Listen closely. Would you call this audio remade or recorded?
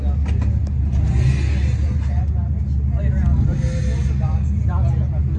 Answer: recorded